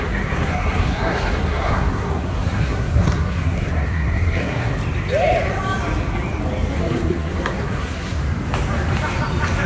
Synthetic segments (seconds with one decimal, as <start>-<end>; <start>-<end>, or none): 0.0-4.7; 6.8-8.2